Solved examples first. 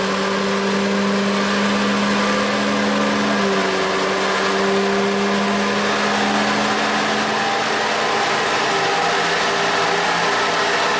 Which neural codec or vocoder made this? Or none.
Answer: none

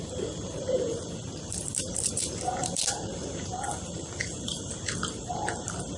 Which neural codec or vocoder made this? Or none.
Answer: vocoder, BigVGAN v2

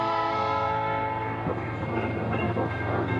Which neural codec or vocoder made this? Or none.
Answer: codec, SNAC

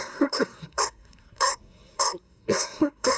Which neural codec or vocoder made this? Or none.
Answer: codec, SNAC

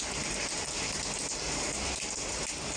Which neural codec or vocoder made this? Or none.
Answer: none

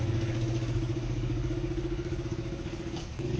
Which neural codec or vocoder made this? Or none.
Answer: codec, DAC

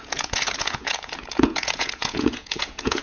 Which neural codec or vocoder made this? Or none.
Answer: vocoder, Vocos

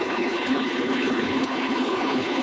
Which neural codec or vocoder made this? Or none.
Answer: codec, HILCodec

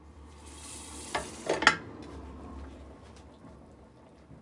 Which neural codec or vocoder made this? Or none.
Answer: none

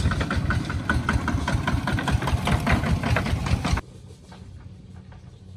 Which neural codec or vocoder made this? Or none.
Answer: none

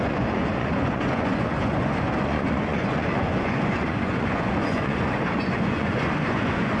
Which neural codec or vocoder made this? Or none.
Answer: vocoder, Vocos